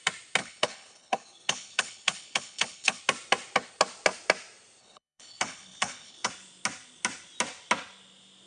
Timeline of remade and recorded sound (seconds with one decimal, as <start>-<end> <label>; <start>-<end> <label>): 0.0-0.4 recorded; 0.4-3.0 remade; 3.0-4.8 recorded; 4.8-6.3 remade; 6.3-8.5 recorded